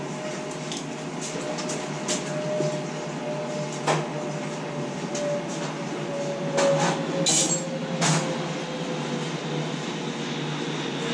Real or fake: real